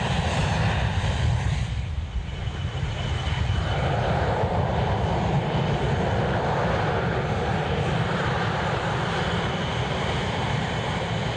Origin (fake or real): fake